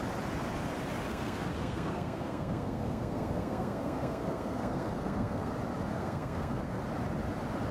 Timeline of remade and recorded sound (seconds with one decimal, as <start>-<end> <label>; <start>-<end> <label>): 0.0-1.1 recorded; 1.1-5.5 remade; 5.5-5.9 recorded; 5.9-6.8 remade; 6.8-7.7 recorded